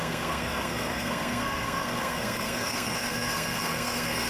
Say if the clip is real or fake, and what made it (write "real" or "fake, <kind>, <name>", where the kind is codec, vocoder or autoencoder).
fake, codec, SNAC